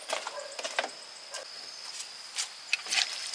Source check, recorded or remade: recorded